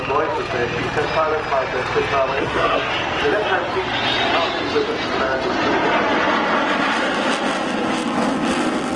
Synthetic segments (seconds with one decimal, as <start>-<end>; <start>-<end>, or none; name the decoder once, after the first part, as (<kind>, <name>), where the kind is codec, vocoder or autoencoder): 2.4-2.9 (codec, SNAC)